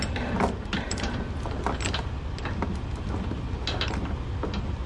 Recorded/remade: recorded